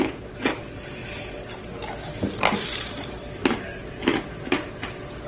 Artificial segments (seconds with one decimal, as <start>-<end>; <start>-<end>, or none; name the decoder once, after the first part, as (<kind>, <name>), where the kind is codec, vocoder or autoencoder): none